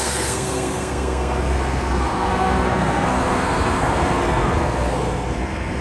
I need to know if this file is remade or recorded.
remade